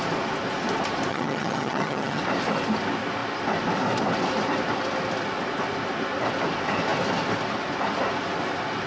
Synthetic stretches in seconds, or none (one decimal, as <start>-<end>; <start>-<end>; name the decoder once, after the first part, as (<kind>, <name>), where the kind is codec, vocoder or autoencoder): 1.1-2.2 (vocoder, HiFi-GAN)